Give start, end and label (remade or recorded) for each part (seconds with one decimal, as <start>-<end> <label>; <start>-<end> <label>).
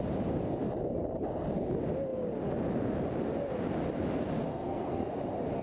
0.0-4.5 recorded; 4.5-5.1 remade; 5.1-5.6 recorded